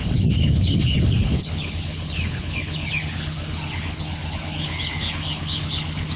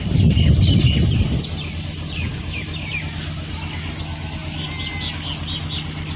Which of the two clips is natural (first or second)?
second